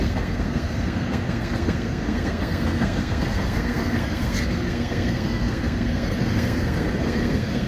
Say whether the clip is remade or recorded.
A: remade